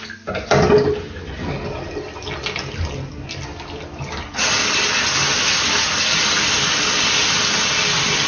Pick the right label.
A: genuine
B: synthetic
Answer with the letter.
A